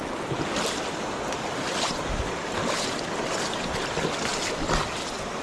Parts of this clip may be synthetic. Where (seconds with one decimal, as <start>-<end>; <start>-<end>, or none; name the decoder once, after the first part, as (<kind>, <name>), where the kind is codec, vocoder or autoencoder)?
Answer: none